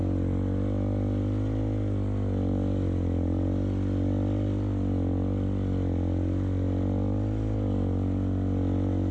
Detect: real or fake real